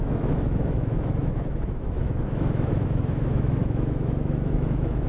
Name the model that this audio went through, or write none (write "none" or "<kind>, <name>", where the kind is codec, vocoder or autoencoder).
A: autoencoder, DAC-VAE